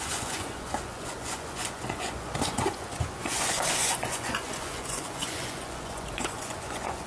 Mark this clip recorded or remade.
remade